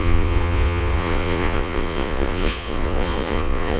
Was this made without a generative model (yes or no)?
no